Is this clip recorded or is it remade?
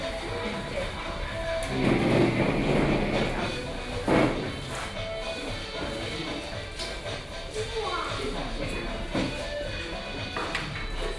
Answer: recorded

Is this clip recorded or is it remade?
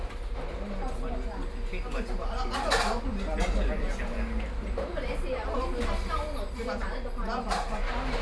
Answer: recorded